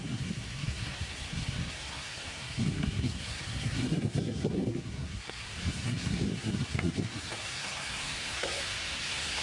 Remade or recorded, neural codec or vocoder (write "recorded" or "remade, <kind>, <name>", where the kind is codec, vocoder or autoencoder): remade, codec, SNAC